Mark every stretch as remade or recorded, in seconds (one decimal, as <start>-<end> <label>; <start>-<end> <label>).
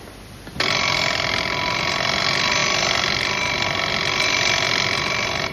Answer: 0.0-5.5 recorded